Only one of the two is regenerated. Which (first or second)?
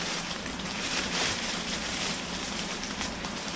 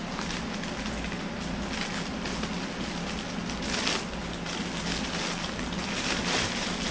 first